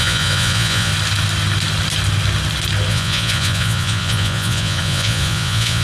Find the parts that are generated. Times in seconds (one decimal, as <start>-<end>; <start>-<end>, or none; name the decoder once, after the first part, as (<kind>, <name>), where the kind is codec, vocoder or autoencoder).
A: 0.0-0.9 (vocoder, Vocos); 2.9-5.8